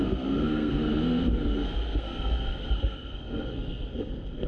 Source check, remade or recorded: remade